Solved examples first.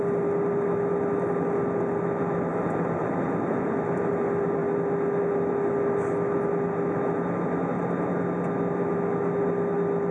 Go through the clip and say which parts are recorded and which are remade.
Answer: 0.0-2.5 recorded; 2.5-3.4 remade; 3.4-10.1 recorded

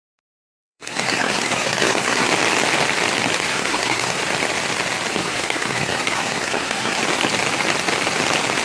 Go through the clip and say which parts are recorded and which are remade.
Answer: 0.0-2.3 remade; 2.3-3.5 recorded; 3.5-4.2 remade; 4.2-5.2 recorded; 5.2-7.0 remade; 7.0-8.6 recorded

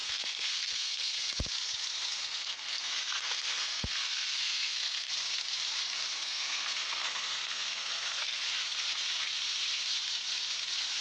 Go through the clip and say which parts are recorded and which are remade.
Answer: 0.0-1.3 remade; 1.3-2.2 recorded; 2.2-5.1 remade; 5.1-6.2 recorded; 6.2-8.5 remade; 8.5-11.0 recorded

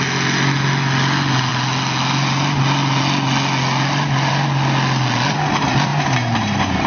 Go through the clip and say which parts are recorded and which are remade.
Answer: 0.0-5.9 recorded; 5.9-6.9 remade

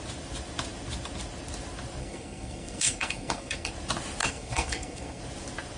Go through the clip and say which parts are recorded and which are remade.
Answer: 0.0-2.0 recorded; 2.0-3.7 remade; 3.7-4.2 recorded; 4.2-5.2 remade; 5.2-5.8 recorded